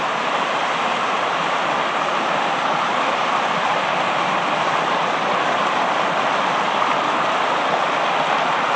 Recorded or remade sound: recorded